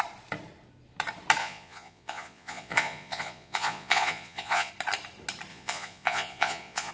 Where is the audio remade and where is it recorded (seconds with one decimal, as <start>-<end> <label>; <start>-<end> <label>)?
0.0-1.4 recorded; 1.4-4.7 remade; 4.7-5.5 recorded; 5.5-6.9 remade